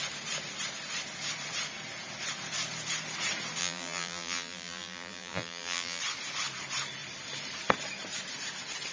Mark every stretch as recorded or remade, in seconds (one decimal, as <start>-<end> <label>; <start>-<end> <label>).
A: 0.0-3.6 recorded; 3.6-6.0 remade; 6.0-8.9 recorded

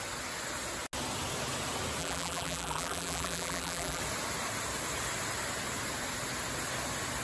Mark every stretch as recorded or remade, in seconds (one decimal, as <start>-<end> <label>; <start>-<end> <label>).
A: 0.0-2.0 recorded; 2.0-4.0 remade; 4.0-7.2 recorded

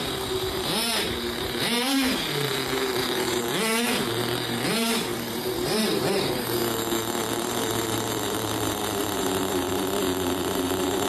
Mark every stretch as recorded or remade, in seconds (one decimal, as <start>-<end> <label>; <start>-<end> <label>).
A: 0.0-6.6 remade; 6.6-7.2 recorded; 7.2-11.1 remade

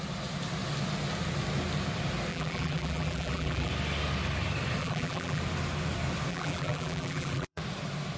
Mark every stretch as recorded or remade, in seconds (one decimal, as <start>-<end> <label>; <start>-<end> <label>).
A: 0.0-2.3 recorded; 2.3-3.7 remade; 3.7-4.8 recorded; 4.8-5.4 remade; 5.4-6.3 recorded; 6.3-7.6 remade; 7.6-8.2 recorded

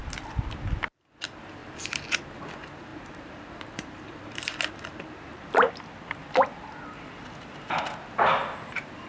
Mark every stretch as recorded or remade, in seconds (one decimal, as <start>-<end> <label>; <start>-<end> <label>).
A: 0.0-1.6 recorded; 1.6-2.3 remade; 2.3-2.9 recorded; 2.9-5.7 remade; 5.7-9.1 recorded

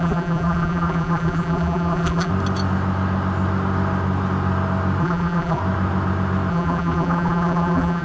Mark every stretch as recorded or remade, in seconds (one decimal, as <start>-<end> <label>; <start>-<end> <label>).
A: 0.0-2.3 remade; 2.3-5.0 recorded; 5.0-5.6 remade; 5.6-6.5 recorded; 6.5-8.0 remade

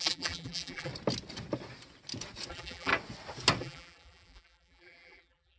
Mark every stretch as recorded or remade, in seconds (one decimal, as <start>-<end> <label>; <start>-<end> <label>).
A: 0.0-0.9 remade; 0.9-2.5 recorded; 2.5-2.9 remade; 2.9-3.6 recorded; 3.6-5.6 remade